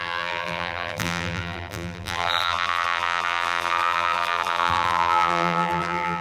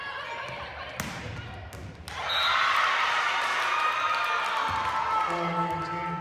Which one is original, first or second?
second